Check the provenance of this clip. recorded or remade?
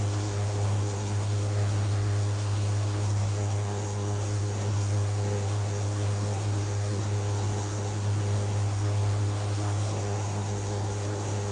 remade